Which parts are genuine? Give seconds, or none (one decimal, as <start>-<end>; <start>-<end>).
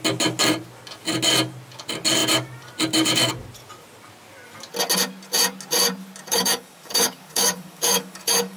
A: 0.0-6.3